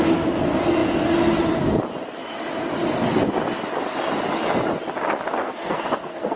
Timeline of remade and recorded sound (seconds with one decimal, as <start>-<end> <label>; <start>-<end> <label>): 0.0-5.4 recorded; 5.4-6.4 remade